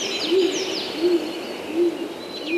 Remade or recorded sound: recorded